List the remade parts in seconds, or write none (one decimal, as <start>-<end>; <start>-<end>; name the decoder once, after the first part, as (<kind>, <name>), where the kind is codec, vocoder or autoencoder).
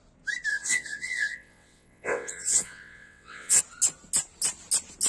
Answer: 0.5-3.6 (vocoder, WaveNeXt)